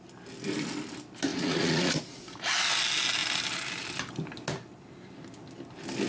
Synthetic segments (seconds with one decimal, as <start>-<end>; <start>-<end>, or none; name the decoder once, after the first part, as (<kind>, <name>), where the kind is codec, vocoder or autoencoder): 1.3-2.0 (vocoder, Vocos)